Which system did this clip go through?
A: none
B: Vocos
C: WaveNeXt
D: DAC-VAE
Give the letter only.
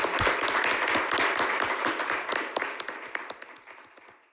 A